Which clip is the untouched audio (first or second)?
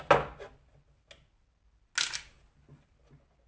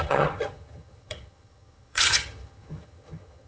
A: first